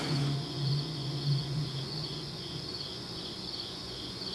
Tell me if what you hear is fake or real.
fake